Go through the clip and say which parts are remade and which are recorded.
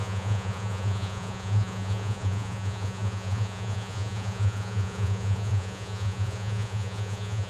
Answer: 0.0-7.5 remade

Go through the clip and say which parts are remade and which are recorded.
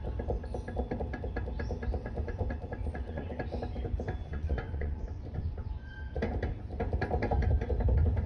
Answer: 0.0-2.0 recorded; 2.0-3.3 remade; 3.3-4.2 recorded; 4.2-6.2 remade; 6.2-8.3 recorded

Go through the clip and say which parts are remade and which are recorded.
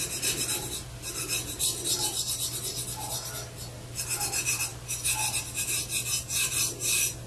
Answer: 0.0-7.3 recorded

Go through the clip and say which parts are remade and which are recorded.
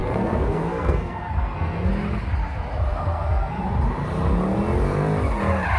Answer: 0.0-1.9 remade; 1.9-2.9 recorded; 2.9-3.6 remade; 3.6-5.8 recorded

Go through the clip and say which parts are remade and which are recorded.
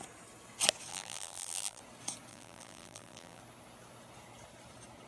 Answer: 0.0-0.9 recorded; 0.9-1.8 remade; 1.8-2.3 recorded; 2.3-3.4 remade; 3.4-5.1 recorded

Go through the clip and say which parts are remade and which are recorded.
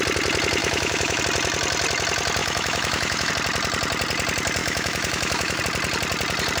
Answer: 0.0-0.6 recorded; 0.6-1.2 remade; 1.2-2.4 recorded; 2.4-3.3 remade; 3.3-4.6 recorded; 4.6-5.6 remade; 5.6-6.6 recorded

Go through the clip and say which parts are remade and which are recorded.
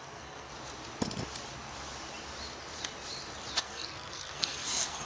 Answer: 0.0-0.5 remade; 0.5-3.6 recorded; 3.6-5.1 remade